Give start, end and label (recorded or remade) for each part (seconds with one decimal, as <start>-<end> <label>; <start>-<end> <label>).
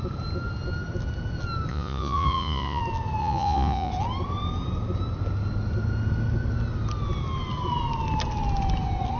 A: 0.0-1.7 recorded; 1.7-2.8 remade; 2.8-3.2 recorded; 3.2-3.9 remade; 3.9-9.2 recorded